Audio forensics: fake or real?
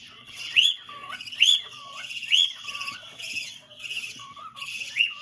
fake